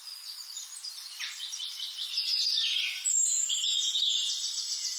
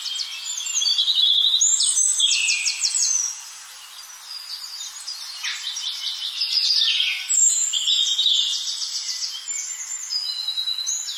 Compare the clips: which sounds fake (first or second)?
first